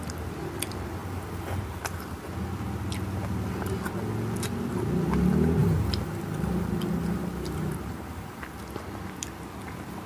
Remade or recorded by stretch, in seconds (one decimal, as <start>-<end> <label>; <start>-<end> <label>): 0.0-1.0 recorded; 1.0-1.6 remade; 1.6-5.6 recorded; 5.6-8.6 remade; 8.6-10.1 recorded